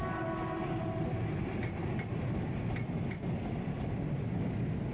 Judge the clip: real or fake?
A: real